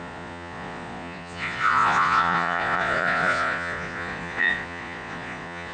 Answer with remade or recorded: remade